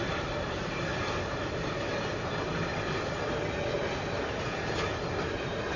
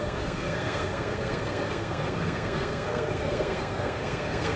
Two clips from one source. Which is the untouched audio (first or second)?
first